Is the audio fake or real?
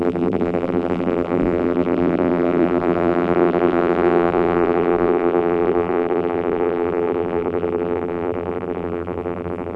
fake